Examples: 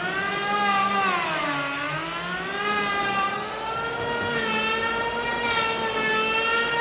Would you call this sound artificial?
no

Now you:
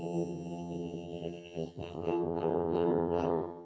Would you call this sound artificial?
yes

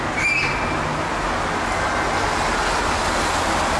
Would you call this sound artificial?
no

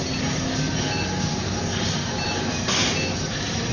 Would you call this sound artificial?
no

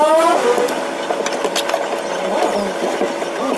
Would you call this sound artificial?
no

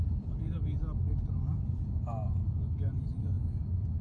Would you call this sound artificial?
yes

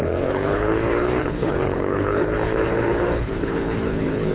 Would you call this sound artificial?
yes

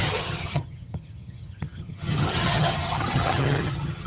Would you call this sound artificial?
yes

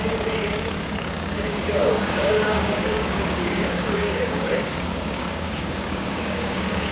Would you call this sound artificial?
yes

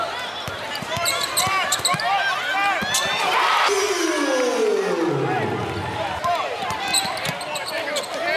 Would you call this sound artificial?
no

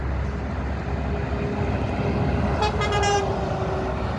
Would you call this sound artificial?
no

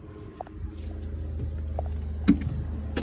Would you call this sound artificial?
no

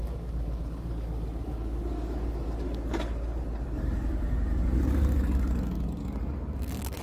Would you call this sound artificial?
yes